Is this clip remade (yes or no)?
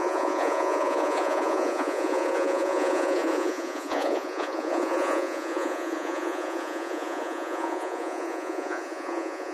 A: yes